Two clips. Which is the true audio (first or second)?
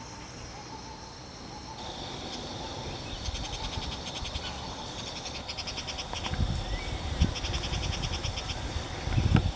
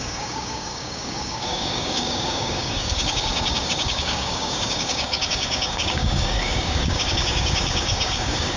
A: first